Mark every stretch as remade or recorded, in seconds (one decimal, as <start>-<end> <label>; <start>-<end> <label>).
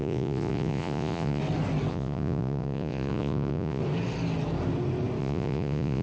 0.0-1.4 remade; 1.4-1.9 recorded; 1.9-3.8 remade; 3.8-5.2 recorded; 5.2-6.0 remade